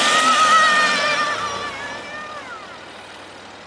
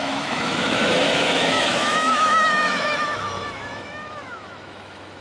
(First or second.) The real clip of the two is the first